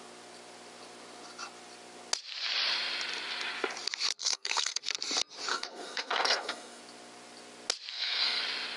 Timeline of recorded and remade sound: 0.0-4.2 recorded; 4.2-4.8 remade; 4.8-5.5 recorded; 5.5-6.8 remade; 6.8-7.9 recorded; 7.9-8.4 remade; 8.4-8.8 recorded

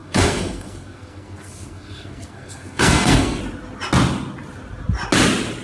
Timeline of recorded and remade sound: 0.0-3.4 remade; 3.4-5.6 recorded

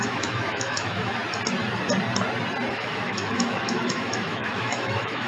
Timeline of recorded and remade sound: 0.0-1.2 remade; 1.2-2.7 recorded; 2.7-5.3 remade